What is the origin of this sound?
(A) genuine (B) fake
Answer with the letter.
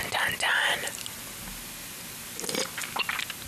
A